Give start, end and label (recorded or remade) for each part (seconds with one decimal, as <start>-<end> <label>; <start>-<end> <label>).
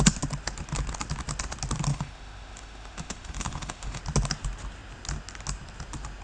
0.0-1.9 recorded; 1.9-4.0 remade; 4.0-6.2 recorded